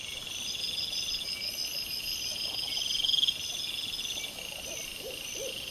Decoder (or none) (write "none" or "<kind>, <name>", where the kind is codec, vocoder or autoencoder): none